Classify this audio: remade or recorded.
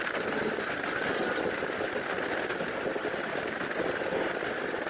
recorded